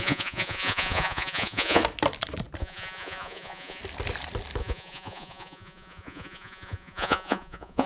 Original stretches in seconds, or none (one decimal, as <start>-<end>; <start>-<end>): 1.8-2.6; 3.8-4.6